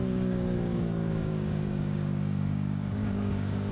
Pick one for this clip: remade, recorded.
remade